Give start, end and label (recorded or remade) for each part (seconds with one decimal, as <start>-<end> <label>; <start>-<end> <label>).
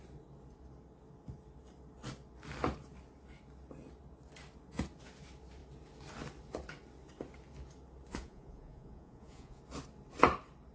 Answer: 0.0-8.1 recorded; 8.1-9.6 remade; 9.6-10.7 recorded